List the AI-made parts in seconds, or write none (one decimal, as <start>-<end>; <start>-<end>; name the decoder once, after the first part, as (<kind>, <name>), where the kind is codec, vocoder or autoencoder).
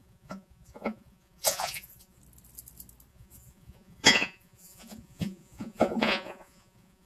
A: 0.0-2.2 (vocoder, Vocos); 3.1-7.1